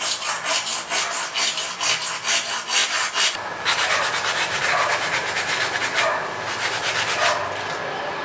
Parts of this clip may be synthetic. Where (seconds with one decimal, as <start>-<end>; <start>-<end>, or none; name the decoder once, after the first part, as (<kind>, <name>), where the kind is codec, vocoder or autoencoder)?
2.8-3.5 (vocoder, BigVGAN v2)